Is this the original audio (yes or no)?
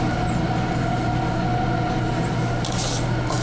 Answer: yes